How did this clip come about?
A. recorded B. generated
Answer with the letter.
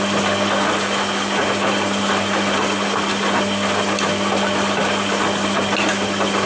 A